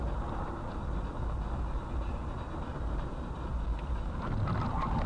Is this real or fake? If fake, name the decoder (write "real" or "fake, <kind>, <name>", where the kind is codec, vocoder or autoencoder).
real